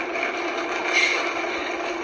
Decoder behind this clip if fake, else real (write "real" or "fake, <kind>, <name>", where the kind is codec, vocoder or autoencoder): real